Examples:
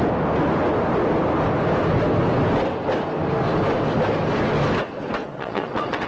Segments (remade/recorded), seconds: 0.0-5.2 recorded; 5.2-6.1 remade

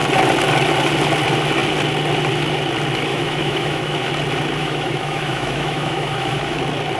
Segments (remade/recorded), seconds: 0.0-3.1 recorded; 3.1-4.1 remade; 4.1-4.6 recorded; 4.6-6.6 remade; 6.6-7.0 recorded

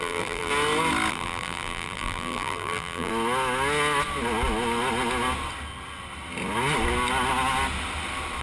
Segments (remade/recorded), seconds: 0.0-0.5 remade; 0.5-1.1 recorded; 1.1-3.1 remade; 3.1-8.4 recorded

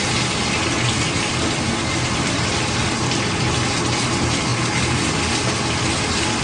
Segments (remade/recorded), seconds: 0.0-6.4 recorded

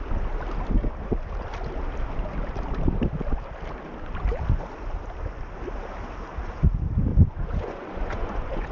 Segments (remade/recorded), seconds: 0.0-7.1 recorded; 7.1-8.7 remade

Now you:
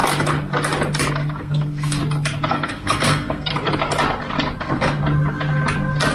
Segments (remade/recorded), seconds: 0.0-1.1 recorded; 1.1-2.0 remade; 2.0-2.5 recorded; 2.5-3.5 remade; 3.5-4.6 recorded; 4.6-5.0 remade; 5.0-6.1 recorded